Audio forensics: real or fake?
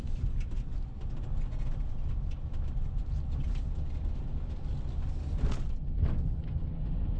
real